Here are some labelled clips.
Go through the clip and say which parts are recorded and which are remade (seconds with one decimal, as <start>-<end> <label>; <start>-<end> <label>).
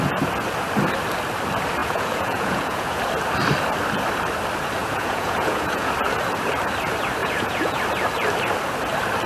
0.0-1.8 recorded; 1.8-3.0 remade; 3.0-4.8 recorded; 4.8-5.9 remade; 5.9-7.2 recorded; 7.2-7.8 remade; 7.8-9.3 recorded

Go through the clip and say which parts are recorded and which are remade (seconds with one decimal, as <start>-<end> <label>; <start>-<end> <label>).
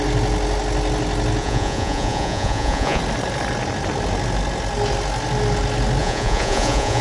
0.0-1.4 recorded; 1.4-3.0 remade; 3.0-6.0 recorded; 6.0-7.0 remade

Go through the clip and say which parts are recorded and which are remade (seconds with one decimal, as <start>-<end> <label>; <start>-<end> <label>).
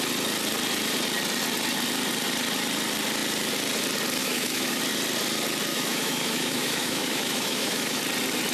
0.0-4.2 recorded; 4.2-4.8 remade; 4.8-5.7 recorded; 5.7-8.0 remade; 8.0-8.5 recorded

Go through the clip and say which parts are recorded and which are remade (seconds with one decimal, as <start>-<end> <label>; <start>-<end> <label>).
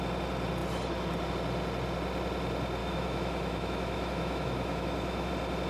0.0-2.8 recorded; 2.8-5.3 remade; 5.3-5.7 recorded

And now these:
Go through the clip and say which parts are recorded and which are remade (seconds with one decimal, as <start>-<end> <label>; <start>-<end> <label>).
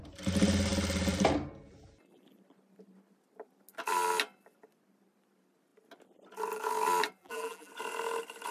0.0-7.2 recorded; 7.2-7.7 remade; 7.7-8.5 recorded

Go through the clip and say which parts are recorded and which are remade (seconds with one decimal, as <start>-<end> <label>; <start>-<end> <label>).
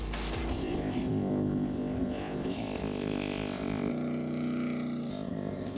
0.0-0.5 recorded; 0.5-3.9 remade; 3.9-5.1 recorded; 5.1-5.8 remade